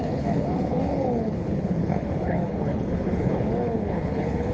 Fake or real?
fake